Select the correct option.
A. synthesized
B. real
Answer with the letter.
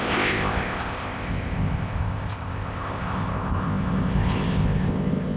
A